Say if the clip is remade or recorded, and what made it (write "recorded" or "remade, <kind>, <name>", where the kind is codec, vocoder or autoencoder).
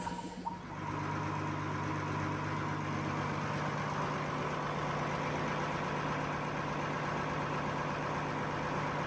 recorded